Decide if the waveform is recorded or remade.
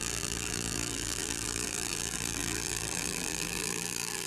remade